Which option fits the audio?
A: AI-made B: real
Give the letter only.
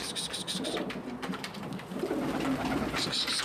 B